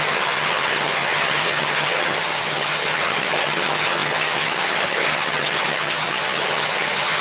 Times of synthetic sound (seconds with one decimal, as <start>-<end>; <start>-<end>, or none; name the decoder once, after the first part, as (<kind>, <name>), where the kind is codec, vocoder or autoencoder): 0.0-7.2 (vocoder, HiFi-GAN)